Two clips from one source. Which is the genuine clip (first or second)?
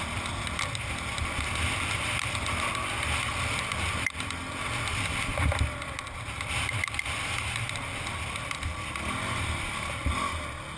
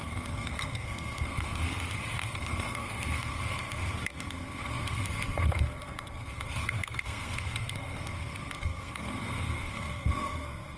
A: first